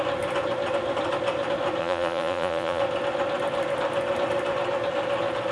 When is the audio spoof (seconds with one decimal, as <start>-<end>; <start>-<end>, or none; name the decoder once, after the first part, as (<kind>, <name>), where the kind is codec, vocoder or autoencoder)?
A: 1.8-2.8 (vocoder, Vocos)

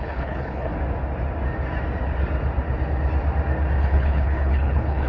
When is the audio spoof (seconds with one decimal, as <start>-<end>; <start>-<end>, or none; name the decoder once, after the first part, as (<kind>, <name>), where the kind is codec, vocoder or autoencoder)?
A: 0.0-0.7 (codec, HILCodec); 3.8-5.1

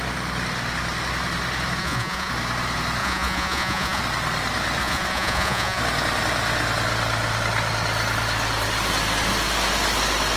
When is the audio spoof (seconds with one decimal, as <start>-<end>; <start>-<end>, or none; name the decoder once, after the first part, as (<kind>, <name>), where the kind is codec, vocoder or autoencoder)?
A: 1.8-2.3 (vocoder, Vocos); 3.0-4.0; 4.8-5.8

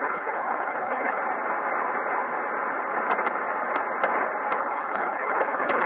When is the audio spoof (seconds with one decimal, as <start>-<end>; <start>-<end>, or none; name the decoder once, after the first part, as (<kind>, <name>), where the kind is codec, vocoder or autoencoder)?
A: 0.0-1.2 (codec, HILCodec); 4.6-5.9

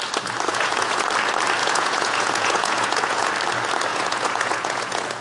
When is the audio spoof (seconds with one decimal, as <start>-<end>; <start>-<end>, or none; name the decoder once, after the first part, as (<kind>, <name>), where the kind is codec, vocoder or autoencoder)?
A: 0.5-1.1 (vocoder, Vocos); 1.6-3.3; 3.9-5.2

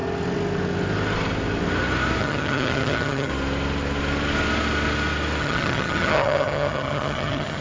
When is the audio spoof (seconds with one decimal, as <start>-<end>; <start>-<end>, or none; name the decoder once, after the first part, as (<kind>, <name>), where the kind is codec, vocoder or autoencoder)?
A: 2.2-3.3 (vocoder, HiFi-GAN); 5.4-7.6

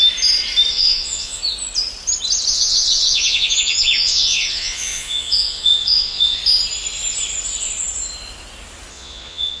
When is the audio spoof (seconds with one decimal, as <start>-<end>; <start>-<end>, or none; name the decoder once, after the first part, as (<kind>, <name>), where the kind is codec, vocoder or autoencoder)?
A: 0.7-1.4 (vocoder, Vocos); 2.5-6.4; 8.9-9.6